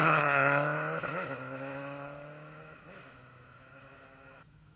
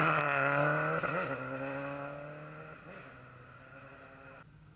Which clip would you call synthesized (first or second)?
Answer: first